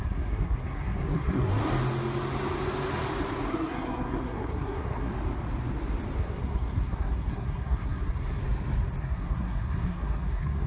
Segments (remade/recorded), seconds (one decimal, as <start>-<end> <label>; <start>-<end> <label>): 0.0-1.5 remade; 1.5-3.5 recorded; 3.5-5.1 remade; 5.1-6.2 recorded; 6.2-8.4 remade; 8.4-9.0 recorded; 9.0-10.7 remade